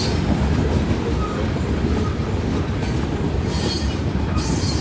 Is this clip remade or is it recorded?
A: recorded